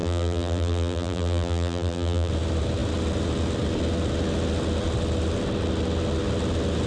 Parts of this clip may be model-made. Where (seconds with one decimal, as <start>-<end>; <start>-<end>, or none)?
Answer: 0.0-2.3